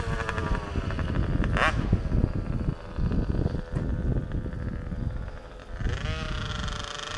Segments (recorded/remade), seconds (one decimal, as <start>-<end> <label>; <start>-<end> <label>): 0.0-7.2 recorded